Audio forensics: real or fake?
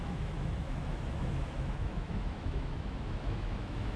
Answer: fake